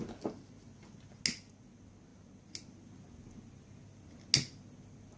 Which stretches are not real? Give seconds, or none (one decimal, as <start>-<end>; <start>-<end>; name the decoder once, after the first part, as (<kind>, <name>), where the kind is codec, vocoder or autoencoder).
none